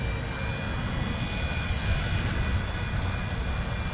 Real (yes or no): yes